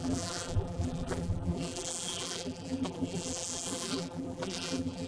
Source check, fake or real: fake